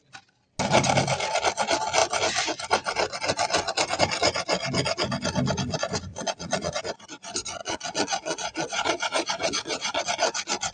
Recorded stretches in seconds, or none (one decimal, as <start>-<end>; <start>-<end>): 0.0-6.1; 6.8-7.6; 10.0-10.7